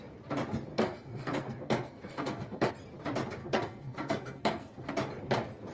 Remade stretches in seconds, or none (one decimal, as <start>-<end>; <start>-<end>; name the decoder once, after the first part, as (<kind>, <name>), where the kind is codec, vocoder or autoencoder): 0.7-2.7 (codec, SNAC); 3.4-4.9